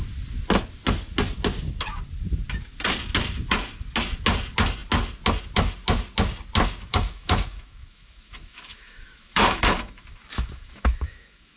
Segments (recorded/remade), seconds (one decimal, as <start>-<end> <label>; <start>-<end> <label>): 0.0-6.9 recorded; 6.9-11.6 remade